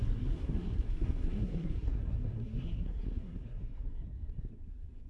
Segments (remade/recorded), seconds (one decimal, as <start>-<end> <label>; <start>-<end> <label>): 0.0-5.1 remade